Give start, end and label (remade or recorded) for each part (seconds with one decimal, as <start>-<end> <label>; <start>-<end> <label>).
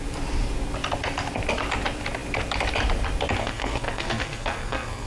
0.0-3.4 recorded; 3.4-5.1 remade